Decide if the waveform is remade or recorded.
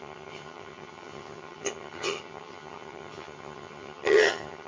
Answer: remade